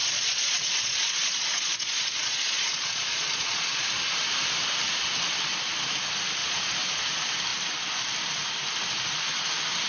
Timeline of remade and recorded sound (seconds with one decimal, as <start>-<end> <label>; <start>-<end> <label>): 0.0-3.9 remade; 3.9-6.4 recorded; 6.4-7.0 remade; 7.0-9.9 recorded